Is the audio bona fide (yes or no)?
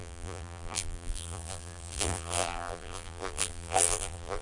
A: no